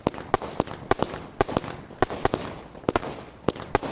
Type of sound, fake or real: real